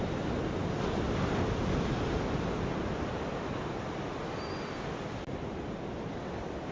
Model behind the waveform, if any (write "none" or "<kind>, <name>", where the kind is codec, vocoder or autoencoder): none